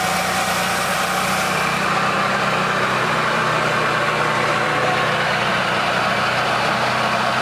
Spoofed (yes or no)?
no